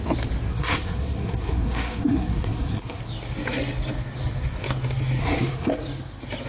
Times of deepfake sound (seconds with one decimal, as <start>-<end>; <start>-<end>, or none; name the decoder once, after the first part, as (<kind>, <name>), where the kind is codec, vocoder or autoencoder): 0.5-3.0 (codec, SNAC); 5.2-5.7